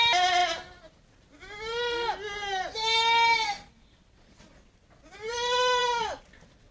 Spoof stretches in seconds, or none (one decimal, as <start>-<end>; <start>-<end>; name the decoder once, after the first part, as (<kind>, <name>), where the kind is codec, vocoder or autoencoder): none

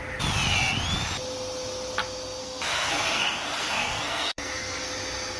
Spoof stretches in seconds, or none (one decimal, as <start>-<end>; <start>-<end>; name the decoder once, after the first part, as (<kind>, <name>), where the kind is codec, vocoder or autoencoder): 2.4-4.9 (codec, SNAC)

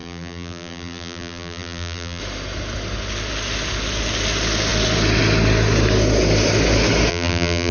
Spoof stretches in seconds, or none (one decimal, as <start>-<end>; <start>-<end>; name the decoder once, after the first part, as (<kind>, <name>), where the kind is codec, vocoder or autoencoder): 0.0-2.2 (vocoder, BigVGAN v2); 7.1-7.7

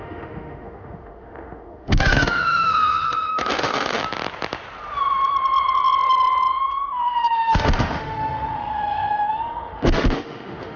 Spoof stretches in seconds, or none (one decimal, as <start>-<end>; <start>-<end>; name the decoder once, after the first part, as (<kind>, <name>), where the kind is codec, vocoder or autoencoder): 0.0-4.0 (autoencoder, DAC-VAE); 6.9-10.8

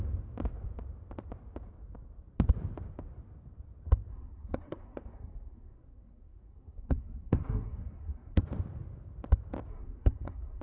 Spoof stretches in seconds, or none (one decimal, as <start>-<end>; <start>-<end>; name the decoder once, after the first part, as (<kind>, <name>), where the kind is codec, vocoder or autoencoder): 4.1-8.4 (codec, SNAC); 9.7-10.6

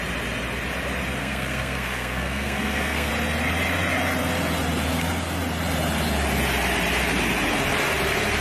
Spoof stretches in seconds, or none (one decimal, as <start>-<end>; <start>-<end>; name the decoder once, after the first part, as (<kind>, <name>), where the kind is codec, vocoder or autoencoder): 1.2-3.1 (codec, SNAC)